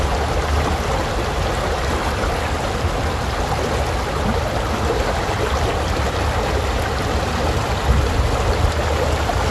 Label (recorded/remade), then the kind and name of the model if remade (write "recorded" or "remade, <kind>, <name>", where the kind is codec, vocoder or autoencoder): recorded